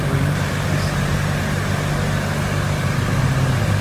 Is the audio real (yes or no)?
yes